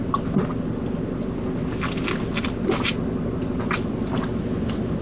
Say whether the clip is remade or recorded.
recorded